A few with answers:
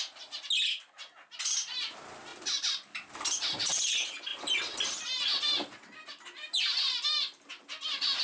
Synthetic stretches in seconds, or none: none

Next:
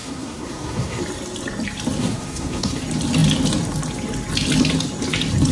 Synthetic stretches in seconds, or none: 0.0-1.0; 2.0-2.8

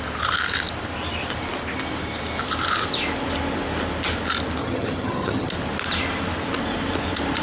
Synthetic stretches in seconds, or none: 4.6-5.5

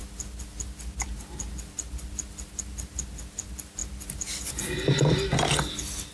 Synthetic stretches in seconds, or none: none

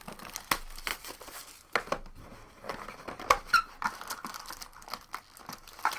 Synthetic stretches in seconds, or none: none